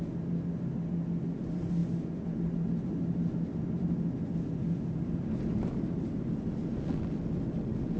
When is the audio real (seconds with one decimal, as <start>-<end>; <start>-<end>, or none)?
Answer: 0.0-8.0